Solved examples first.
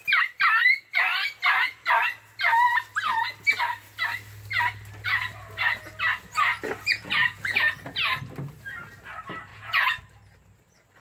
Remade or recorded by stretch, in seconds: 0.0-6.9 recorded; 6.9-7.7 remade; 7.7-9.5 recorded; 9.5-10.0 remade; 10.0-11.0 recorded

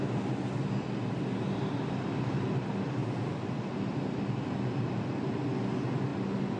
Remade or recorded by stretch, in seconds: 0.0-6.6 recorded

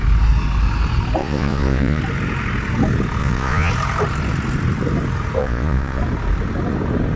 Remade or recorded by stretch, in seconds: 0.0-1.2 recorded; 1.2-2.0 remade; 2.0-3.2 recorded; 3.2-3.7 remade; 3.7-5.4 recorded; 5.4-6.0 remade; 6.0-7.2 recorded

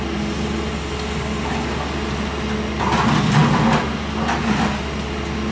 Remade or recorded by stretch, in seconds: 0.0-5.5 recorded

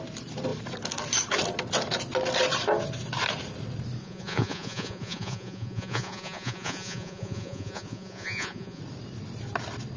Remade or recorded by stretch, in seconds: 0.0-4.0 recorded; 4.0-8.8 remade; 8.8-10.0 recorded

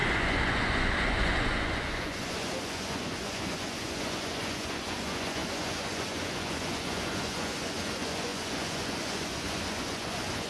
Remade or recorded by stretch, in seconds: 0.0-10.5 remade

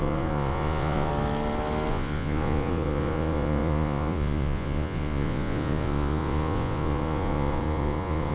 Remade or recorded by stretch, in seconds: 0.0-1.1 remade; 1.1-1.9 recorded; 1.9-8.3 remade